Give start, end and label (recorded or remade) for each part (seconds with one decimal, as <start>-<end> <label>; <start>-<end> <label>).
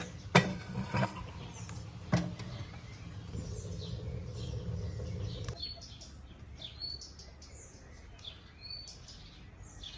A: 0.0-0.5 recorded; 0.5-1.2 remade; 1.2-10.0 recorded